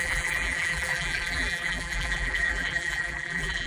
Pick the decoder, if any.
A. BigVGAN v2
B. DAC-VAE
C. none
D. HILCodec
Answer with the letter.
A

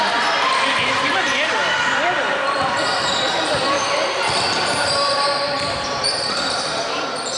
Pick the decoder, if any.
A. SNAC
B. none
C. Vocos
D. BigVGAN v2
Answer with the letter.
D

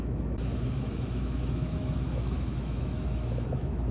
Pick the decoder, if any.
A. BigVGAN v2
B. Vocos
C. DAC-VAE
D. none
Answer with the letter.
C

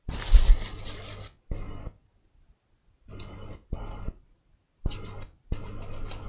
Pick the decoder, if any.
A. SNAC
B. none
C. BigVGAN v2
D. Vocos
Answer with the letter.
B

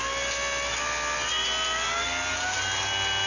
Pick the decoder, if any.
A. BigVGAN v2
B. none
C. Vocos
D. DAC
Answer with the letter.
B